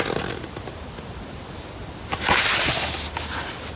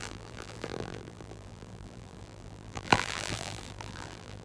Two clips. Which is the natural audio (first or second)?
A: first